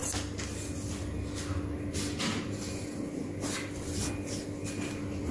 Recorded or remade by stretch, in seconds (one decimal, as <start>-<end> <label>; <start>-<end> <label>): 0.0-5.3 recorded

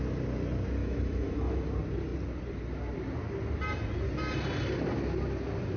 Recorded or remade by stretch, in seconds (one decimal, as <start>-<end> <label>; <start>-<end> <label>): 0.0-0.8 recorded; 0.8-1.7 remade; 1.7-5.8 recorded

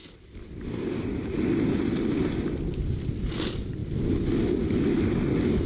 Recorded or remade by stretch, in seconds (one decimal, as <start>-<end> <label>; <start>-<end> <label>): 0.0-5.7 recorded

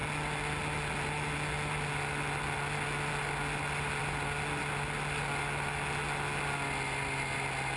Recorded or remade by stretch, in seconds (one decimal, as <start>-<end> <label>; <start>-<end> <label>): 0.0-7.8 recorded

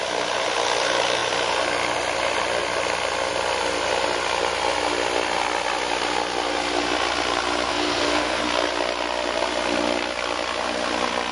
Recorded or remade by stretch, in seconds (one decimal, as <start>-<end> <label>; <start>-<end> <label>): 0.0-7.7 recorded; 7.7-8.4 remade; 8.4-11.3 recorded

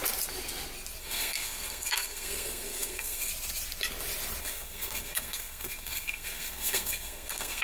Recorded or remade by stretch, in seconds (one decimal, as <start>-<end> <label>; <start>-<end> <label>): 0.0-1.0 recorded; 1.0-3.3 remade; 3.3-4.4 recorded; 4.4-7.6 remade

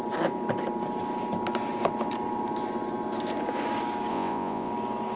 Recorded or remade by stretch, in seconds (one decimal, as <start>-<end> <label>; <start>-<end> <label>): 0.0-4.1 recorded; 4.1-4.7 remade; 4.7-5.2 recorded